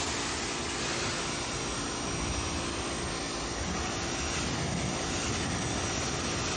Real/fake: real